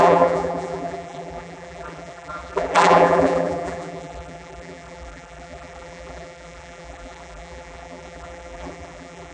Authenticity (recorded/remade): remade